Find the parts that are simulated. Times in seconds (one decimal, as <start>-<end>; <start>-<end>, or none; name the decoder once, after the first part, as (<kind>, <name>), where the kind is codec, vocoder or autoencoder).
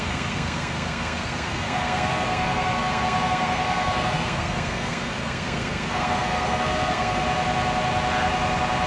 0.0-7.2 (codec, SNAC)